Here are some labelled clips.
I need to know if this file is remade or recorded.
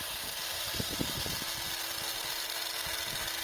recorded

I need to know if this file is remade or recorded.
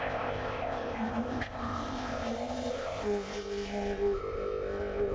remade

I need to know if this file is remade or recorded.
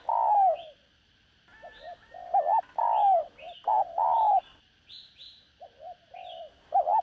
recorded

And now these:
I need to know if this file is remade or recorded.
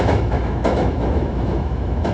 remade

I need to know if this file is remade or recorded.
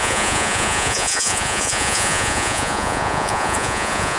remade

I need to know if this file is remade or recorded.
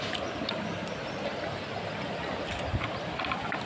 recorded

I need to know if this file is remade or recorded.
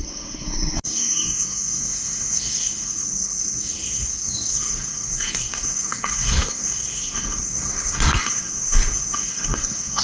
remade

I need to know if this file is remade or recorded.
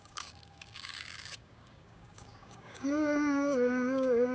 remade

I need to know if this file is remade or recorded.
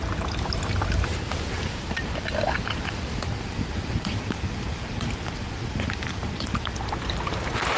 recorded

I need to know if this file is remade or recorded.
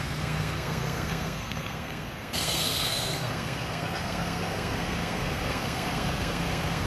remade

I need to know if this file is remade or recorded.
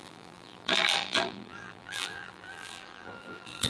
remade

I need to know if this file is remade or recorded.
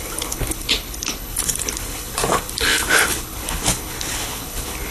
remade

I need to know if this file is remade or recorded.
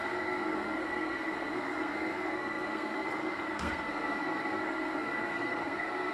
remade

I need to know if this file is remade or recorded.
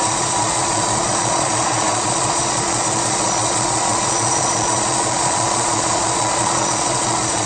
remade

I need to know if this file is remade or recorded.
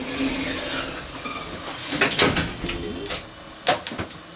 recorded